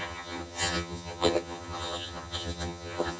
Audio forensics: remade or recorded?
remade